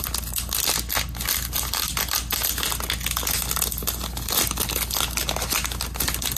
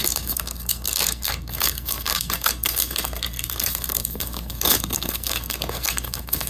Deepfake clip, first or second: second